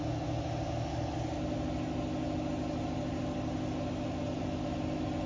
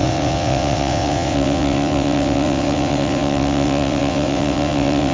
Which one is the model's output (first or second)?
second